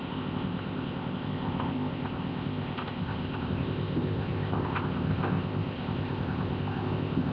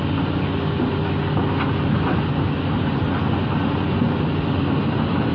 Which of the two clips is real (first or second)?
second